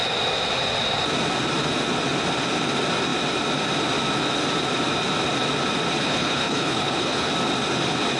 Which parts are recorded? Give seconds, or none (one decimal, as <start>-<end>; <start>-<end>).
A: 0.0-6.0; 7.3-8.2

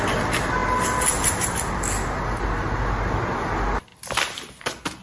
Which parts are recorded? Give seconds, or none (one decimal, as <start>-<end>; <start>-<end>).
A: 0.0-5.0

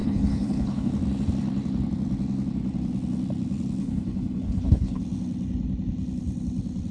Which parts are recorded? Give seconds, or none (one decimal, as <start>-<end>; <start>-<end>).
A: 0.9-3.8; 5.0-6.9

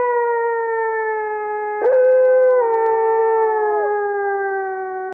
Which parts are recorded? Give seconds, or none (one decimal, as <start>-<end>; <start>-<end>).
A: 0.0-5.1